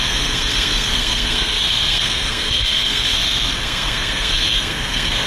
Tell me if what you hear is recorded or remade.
remade